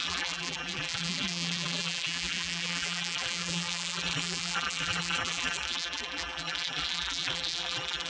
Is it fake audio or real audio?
fake